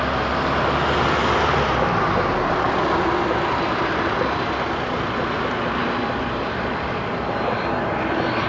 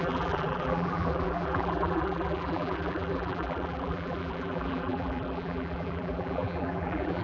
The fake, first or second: second